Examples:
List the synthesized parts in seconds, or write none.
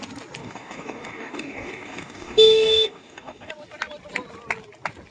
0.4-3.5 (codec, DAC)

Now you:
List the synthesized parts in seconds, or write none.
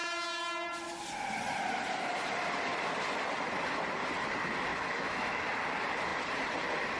4.7-5.4 (autoencoder, DAC-VAE)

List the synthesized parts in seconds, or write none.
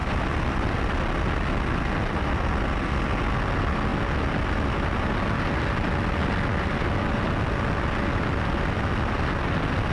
none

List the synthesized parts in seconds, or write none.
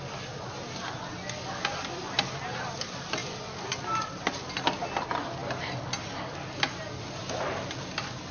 none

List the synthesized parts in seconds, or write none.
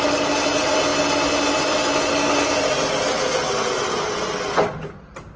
none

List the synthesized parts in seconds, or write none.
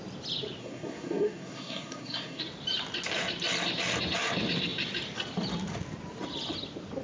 0.6-2.4 (codec, SNAC)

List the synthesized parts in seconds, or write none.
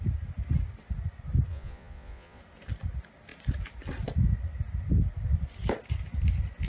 1.5-2.4 (vocoder, Vocos)